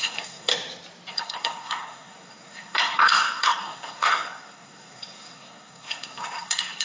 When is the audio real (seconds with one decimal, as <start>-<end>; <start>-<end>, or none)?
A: 0.5-1.1